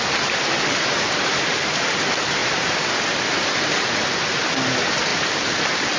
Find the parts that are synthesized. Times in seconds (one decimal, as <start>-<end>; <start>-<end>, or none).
2.4-3.0; 5.1-6.0